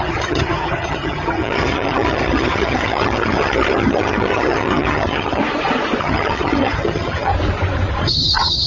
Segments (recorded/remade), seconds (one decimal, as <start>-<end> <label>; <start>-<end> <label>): 0.0-5.4 remade; 5.4-6.0 recorded; 6.0-7.3 remade; 7.3-8.0 recorded; 8.0-8.7 remade